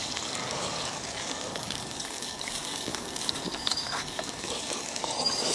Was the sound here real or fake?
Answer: fake